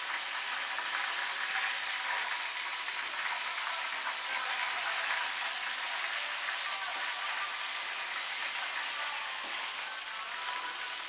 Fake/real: real